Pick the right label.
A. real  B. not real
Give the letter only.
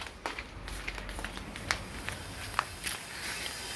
A